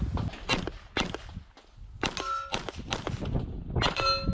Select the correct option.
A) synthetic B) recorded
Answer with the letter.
B